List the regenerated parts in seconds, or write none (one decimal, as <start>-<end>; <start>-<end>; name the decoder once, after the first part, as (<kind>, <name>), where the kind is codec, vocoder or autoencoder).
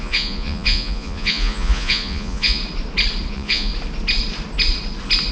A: 0.0-2.6 (vocoder, Vocos); 3.3-3.7